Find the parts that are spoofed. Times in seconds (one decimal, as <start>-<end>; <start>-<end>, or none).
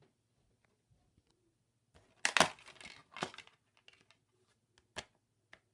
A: none